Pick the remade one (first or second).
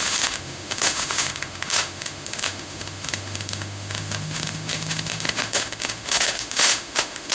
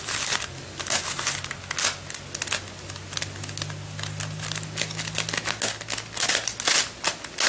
first